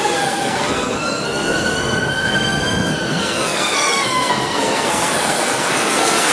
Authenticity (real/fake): fake